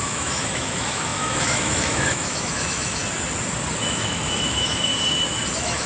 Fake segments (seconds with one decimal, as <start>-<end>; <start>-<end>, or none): 0.0-3.0; 3.8-4.9; 5.5-5.9